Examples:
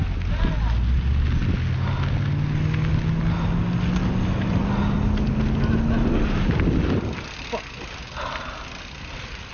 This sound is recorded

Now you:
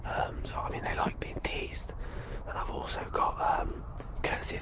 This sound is remade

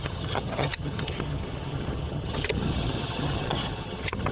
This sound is remade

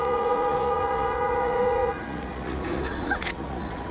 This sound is remade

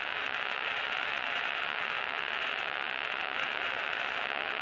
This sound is remade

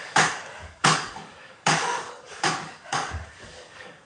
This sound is remade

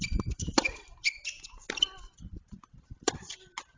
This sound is recorded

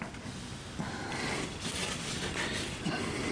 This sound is recorded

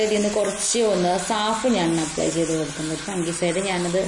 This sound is recorded